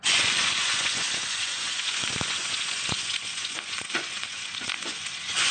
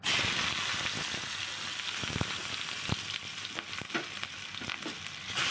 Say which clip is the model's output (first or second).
first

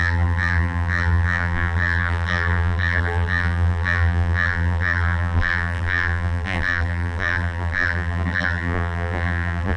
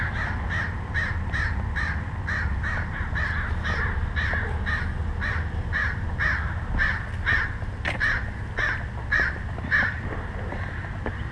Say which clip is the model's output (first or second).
first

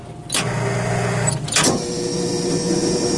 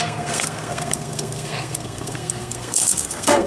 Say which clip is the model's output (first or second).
second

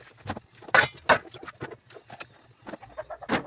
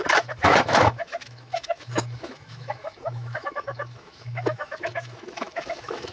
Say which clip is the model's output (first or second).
second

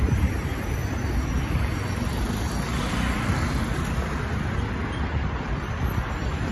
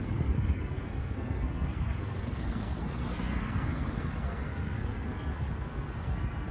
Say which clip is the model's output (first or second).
second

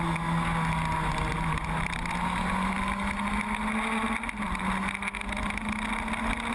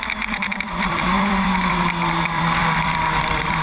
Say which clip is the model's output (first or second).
second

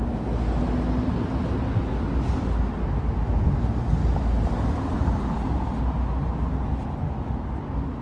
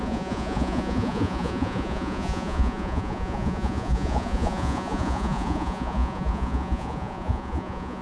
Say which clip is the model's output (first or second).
second